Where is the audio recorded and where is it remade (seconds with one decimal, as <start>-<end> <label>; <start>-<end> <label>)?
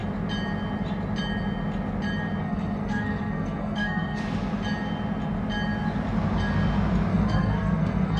0.0-2.4 recorded; 2.4-4.2 remade; 4.2-7.1 recorded; 7.1-8.2 remade